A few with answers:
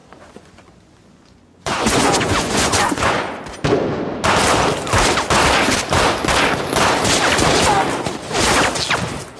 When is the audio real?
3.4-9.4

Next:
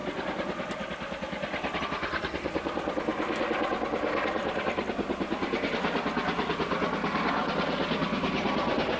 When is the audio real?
0.0-9.0

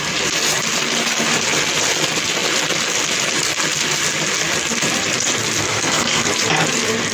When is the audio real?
0.0-5.7; 6.3-7.1

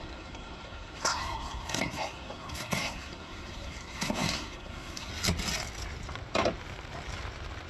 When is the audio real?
5.1-7.7

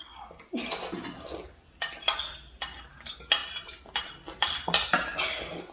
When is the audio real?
0.0-5.7